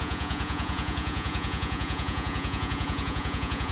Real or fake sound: fake